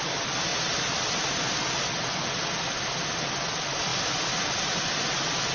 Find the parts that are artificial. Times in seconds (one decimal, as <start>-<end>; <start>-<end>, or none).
none